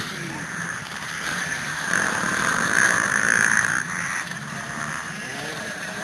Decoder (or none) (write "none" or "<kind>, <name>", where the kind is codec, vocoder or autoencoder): vocoder, BigVGAN v2